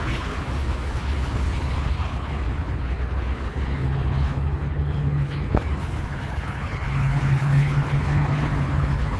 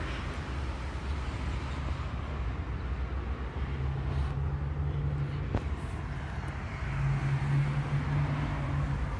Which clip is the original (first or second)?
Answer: second